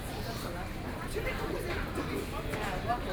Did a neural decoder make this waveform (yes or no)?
no